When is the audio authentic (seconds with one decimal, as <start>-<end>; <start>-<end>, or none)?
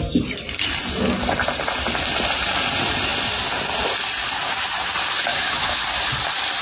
0.0-5.3; 5.8-6.6